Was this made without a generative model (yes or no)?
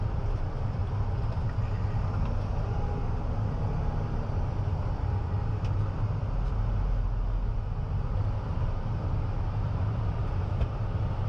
yes